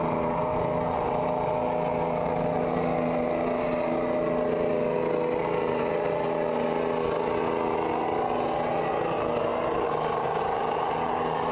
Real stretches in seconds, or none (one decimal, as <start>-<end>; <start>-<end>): 0.0-11.5